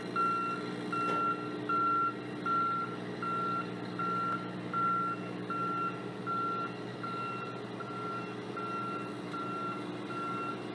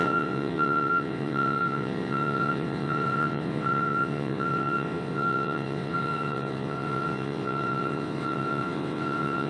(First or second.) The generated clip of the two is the second